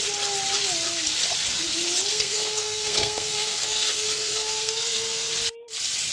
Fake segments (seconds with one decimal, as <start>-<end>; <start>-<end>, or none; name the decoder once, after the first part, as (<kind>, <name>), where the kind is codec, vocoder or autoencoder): 2.1-5.3 (codec, SNAC)